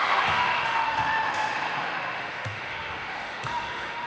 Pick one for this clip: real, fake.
fake